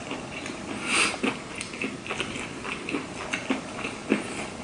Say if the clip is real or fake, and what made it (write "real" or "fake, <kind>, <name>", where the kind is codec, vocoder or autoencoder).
real